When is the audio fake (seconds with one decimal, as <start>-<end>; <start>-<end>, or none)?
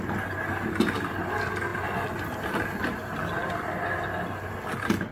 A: none